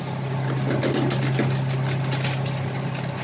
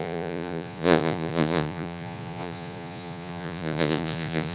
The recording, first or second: first